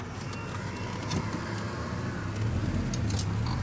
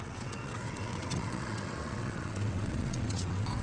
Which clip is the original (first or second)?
first